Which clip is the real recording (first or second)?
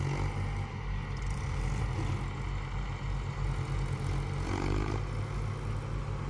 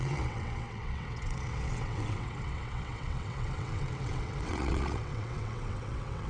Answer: first